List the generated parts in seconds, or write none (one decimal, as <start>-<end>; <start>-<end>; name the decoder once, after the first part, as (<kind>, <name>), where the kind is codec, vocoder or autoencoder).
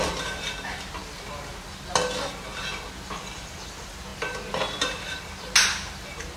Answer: none